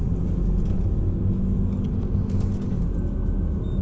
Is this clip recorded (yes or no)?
yes